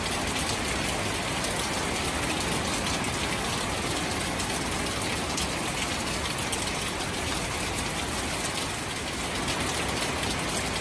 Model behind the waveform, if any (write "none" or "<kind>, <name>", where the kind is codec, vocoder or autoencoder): none